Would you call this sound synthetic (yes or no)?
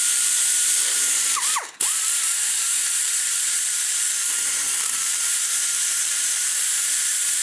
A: yes